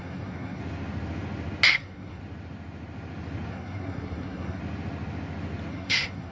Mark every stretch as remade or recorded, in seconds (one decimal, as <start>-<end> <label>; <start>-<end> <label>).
0.0-0.6 remade; 0.6-1.7 recorded; 1.7-2.2 remade; 2.2-3.5 recorded; 3.5-4.6 remade; 4.6-5.7 recorded; 5.7-6.3 remade